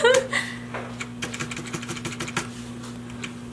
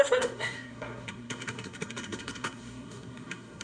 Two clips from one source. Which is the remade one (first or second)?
second